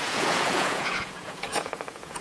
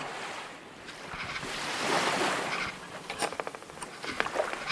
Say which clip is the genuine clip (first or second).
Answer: second